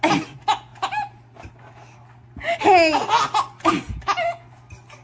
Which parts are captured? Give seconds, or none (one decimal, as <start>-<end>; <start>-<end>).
0.0-0.7; 1.5-5.0